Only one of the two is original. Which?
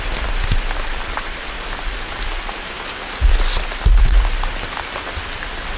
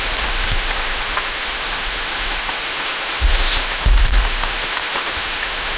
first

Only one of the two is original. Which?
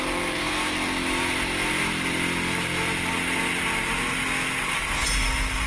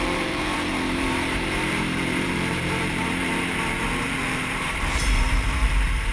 first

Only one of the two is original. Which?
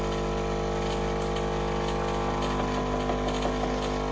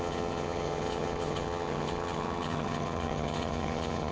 first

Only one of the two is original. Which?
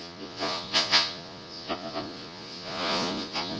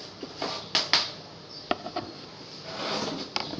second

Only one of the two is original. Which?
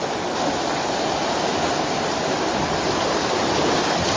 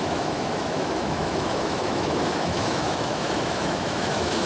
first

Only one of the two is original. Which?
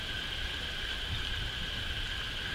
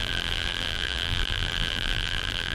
first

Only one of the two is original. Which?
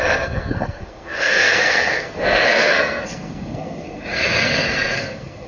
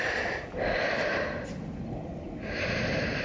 second